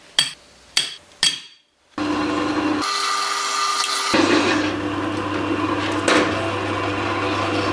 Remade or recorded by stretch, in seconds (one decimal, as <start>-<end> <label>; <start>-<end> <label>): 0.0-3.7 recorded; 3.7-4.4 remade; 4.4-7.7 recorded